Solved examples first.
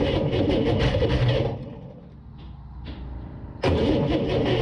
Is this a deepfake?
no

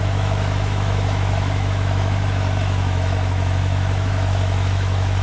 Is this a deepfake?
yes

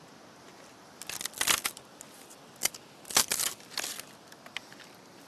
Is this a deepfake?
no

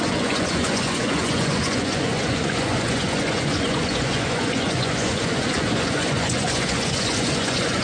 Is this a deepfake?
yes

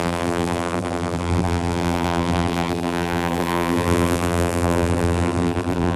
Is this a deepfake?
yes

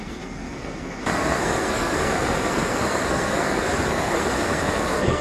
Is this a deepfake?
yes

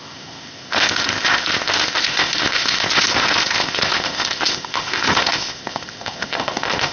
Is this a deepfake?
yes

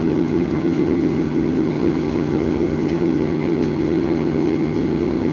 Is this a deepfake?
yes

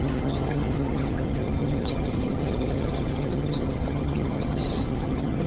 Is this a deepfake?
yes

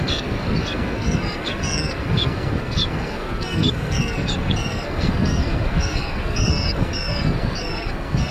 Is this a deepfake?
yes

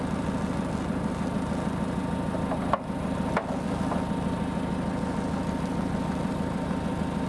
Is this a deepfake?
no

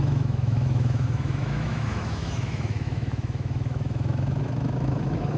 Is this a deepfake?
yes